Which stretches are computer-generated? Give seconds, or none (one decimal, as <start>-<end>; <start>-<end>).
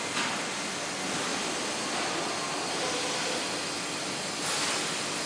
none